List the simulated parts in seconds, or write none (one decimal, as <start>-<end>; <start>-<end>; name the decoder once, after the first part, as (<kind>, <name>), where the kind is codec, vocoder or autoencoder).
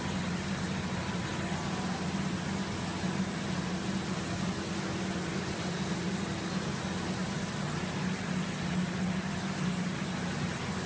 none